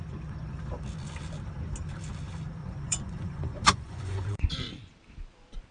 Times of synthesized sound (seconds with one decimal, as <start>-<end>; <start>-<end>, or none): 2.6-4.5